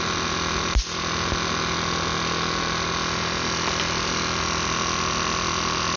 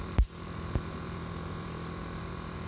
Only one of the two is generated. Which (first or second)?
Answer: second